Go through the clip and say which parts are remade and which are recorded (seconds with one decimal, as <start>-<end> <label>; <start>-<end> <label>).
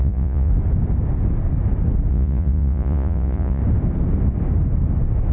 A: 0.0-0.5 remade; 0.5-2.1 recorded; 2.1-3.6 remade; 3.6-5.3 recorded